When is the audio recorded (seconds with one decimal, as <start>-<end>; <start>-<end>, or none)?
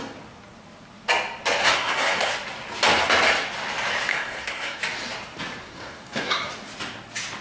0.0-1.6; 2.3-4.1; 4.8-5.6; 6.5-7.4